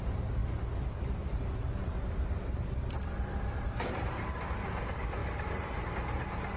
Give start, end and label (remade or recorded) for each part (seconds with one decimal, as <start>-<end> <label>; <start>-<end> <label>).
0.0-6.6 remade